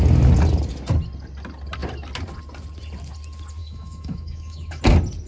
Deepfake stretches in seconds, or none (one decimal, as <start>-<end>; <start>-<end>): 3.6-4.8